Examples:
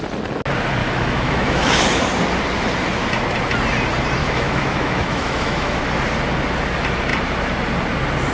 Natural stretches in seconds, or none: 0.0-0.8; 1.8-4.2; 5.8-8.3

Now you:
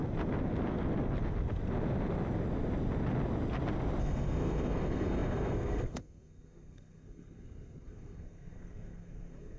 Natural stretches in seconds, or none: 0.0-4.0